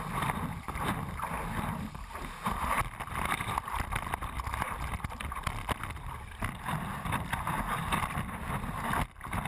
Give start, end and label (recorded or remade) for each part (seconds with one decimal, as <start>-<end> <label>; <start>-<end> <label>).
0.0-9.5 recorded